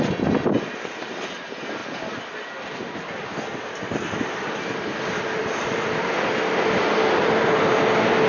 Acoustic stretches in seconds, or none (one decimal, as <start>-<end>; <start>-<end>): 0.0-8.3